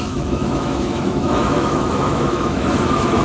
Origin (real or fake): fake